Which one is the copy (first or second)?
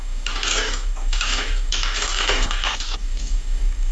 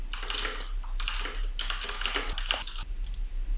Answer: first